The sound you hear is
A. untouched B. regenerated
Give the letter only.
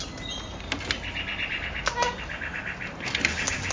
A